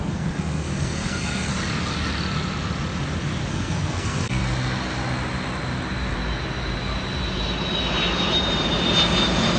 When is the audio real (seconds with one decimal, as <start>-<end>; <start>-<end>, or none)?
1.5-3.5; 4.4-9.6